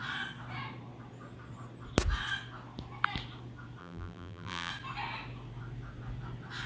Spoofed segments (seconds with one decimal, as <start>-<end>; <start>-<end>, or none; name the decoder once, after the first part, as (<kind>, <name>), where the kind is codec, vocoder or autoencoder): 3.8-4.7 (vocoder, BigVGAN v2)